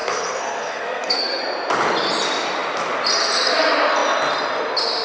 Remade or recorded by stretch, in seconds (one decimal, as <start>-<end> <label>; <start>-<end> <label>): 0.0-1.4 remade; 1.4-5.0 recorded